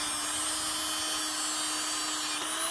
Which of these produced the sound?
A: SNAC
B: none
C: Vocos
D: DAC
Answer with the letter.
B